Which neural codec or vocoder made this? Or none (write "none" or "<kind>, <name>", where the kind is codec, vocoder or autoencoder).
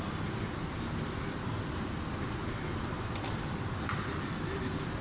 none